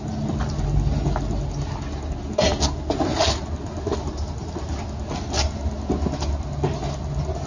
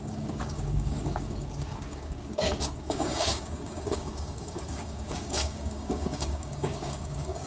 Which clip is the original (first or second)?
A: first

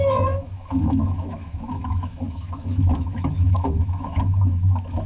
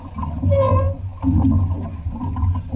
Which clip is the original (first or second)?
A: second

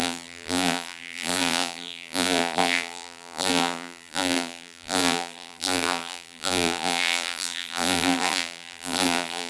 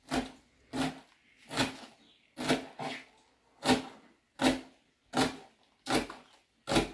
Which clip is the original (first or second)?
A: second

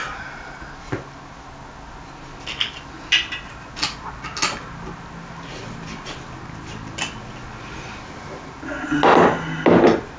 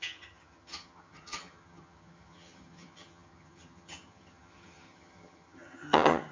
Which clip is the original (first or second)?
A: first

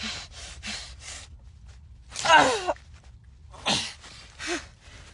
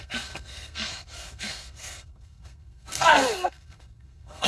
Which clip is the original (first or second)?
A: first